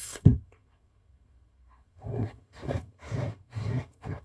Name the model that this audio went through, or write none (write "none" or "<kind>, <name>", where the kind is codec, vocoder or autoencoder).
codec, SNAC